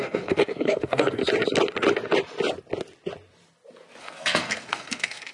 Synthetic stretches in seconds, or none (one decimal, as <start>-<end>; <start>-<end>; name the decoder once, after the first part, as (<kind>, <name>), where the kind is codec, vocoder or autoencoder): 0.0-1.2 (codec, SNAC); 4.0-5.3